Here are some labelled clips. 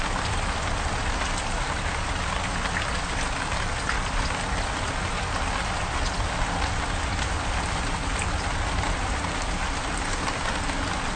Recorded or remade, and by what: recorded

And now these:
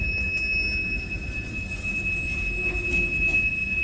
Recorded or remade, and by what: recorded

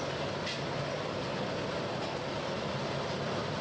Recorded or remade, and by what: recorded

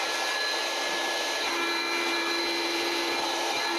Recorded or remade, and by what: recorded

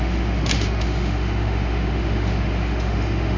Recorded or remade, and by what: remade, autoencoder, DAC-VAE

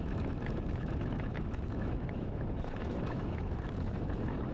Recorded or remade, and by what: remade, autoencoder, DAC-VAE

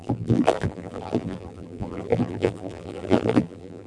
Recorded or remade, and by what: remade, vocoder, BigVGAN v2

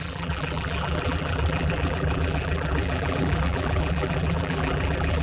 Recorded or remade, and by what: remade, vocoder, BigVGAN v2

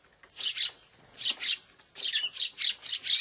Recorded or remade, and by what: recorded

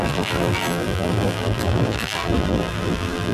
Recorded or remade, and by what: remade, vocoder, BigVGAN v2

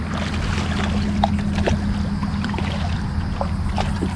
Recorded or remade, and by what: recorded